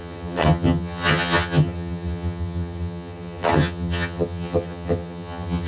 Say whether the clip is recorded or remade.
remade